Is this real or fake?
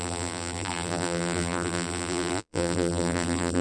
fake